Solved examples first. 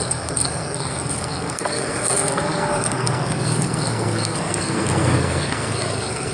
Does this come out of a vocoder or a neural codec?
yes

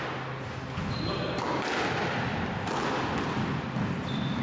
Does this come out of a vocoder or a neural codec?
no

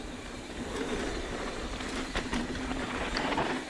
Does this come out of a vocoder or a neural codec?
yes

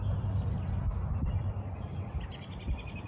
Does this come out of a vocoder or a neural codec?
no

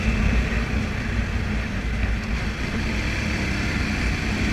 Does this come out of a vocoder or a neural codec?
no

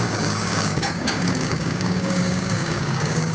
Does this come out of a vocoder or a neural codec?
yes